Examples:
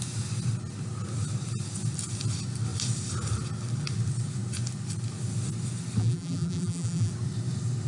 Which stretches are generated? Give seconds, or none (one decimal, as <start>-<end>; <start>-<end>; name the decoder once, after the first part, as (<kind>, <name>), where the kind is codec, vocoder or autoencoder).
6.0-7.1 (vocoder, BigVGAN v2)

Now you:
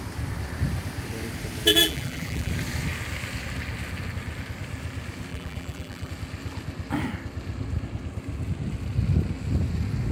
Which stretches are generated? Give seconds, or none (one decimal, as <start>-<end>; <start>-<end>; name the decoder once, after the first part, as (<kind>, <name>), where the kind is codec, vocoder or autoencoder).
1.7-2.5 (vocoder, BigVGAN v2); 5.3-6.1

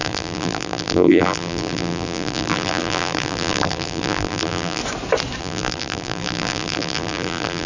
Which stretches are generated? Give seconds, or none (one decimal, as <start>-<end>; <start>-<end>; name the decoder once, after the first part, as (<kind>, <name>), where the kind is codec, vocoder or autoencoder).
0.0-4.8 (vocoder, BigVGAN v2); 5.4-7.7

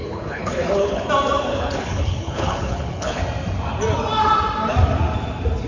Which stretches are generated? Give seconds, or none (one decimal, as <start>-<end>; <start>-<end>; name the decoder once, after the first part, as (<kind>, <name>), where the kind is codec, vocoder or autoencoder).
0.0-1.1 (codec, HILCodec); 1.5-3.2